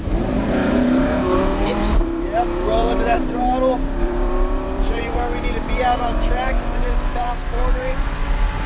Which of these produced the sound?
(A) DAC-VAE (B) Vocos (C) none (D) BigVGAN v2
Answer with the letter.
D